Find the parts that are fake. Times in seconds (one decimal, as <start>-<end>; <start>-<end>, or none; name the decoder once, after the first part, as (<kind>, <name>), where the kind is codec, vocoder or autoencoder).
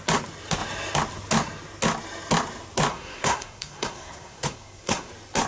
2.9-5.1 (codec, SNAC)